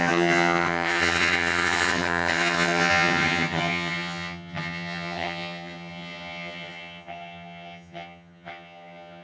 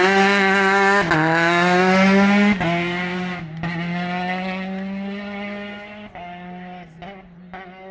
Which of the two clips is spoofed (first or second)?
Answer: first